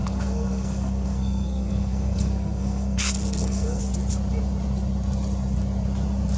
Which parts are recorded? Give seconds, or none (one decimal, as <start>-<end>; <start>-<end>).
3.8-6.4